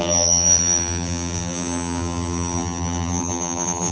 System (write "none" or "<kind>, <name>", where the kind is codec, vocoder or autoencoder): vocoder, BigVGAN v2